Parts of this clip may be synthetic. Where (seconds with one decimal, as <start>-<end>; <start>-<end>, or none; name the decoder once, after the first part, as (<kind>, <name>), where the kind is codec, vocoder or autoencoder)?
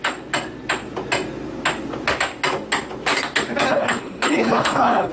3.7-5.1 (codec, HILCodec)